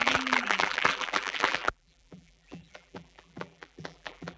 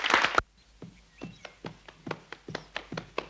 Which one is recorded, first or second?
second